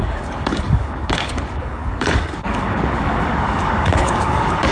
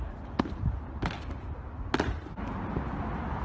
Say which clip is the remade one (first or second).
first